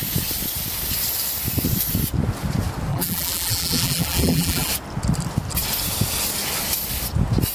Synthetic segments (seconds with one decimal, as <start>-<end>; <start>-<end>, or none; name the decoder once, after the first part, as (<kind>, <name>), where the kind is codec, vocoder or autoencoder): 2.9-4.7 (vocoder, BigVGAN v2)

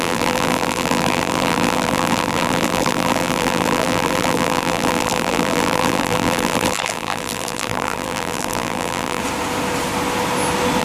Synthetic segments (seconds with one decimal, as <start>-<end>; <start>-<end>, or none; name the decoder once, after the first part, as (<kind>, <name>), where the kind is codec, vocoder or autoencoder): 0.0-9.2 (vocoder, BigVGAN v2)

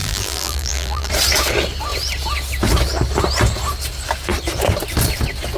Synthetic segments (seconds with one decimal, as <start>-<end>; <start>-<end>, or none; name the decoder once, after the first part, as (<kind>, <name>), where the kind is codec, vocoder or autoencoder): 0.0-1.1 (vocoder, BigVGAN v2)

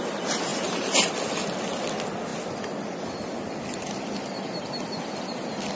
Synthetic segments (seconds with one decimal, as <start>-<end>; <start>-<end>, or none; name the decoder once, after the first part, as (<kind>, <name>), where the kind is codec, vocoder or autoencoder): 0.5-1.1 (vocoder, BigVGAN v2)

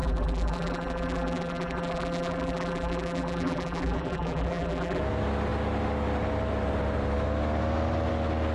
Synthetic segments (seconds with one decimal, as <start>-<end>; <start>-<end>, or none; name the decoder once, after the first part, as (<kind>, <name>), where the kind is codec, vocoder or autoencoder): 0.0-5.0 (vocoder, BigVGAN v2)

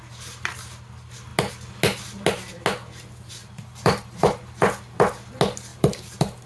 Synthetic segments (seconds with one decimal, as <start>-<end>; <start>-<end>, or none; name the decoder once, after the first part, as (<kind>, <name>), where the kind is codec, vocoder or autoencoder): 3.4-4.2 (vocoder, BigVGAN v2); 5.7-6.5

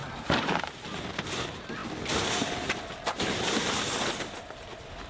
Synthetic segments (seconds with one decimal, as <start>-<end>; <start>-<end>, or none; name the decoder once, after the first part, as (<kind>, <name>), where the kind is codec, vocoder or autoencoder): 0.0-1.1 (vocoder, BigVGAN v2)